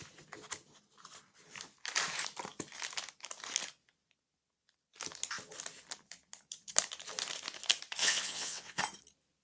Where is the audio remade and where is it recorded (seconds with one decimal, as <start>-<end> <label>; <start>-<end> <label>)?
0.0-8.0 recorded; 8.0-8.8 remade; 8.8-9.4 recorded